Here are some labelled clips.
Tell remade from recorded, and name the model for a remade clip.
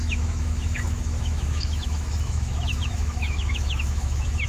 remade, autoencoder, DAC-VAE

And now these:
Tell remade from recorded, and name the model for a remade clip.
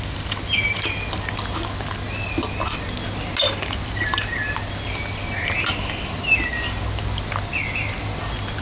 recorded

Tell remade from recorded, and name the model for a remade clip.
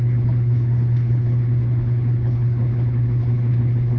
remade, codec, HILCodec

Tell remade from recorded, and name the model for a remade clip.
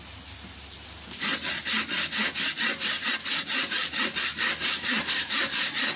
recorded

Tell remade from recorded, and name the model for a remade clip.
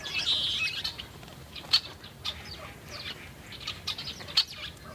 recorded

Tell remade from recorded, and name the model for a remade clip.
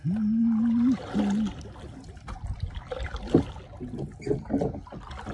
recorded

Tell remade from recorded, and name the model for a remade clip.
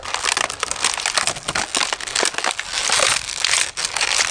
recorded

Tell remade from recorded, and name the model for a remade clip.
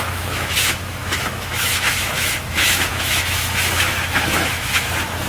remade, autoencoder, DAC-VAE